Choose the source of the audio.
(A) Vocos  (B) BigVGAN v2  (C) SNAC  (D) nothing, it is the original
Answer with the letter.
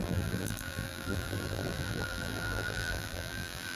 B